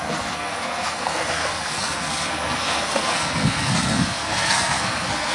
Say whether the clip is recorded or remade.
remade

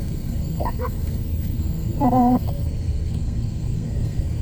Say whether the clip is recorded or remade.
remade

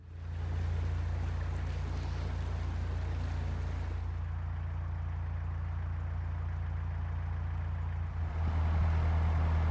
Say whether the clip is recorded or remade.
recorded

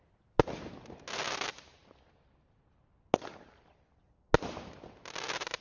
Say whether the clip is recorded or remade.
recorded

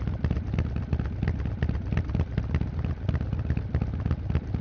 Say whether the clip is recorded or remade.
recorded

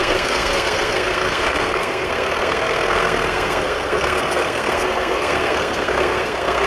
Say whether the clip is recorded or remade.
remade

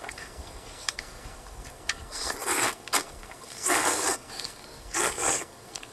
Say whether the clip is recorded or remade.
remade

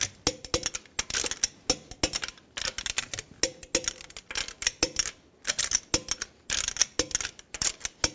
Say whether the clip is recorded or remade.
recorded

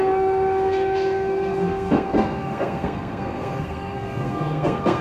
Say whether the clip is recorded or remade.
remade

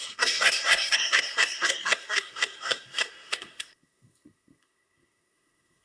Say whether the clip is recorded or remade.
remade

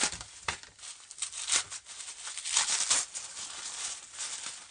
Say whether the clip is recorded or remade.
recorded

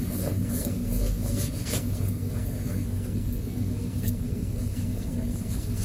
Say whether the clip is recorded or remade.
remade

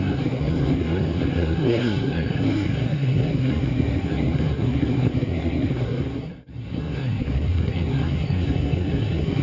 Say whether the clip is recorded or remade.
remade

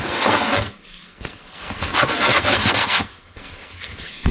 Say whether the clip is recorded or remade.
remade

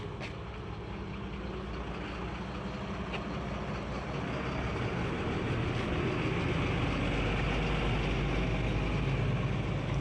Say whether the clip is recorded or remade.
recorded